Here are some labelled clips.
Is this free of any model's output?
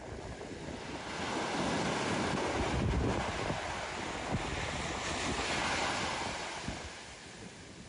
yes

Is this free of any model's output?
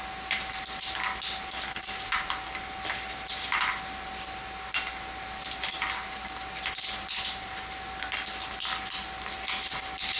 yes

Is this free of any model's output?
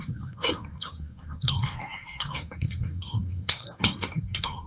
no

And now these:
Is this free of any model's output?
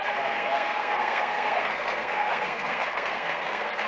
no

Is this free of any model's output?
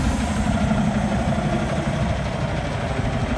yes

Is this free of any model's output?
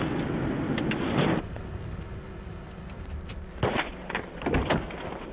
yes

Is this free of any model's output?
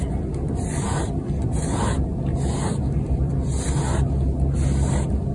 yes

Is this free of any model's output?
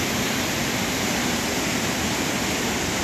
yes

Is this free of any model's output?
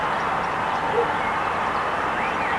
yes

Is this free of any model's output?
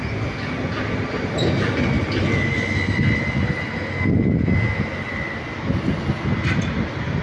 yes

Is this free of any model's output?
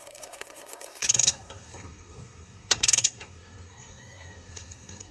no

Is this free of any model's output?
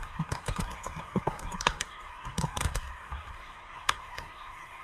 no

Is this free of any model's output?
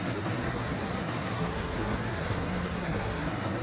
no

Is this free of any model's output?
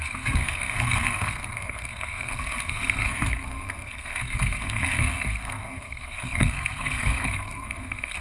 no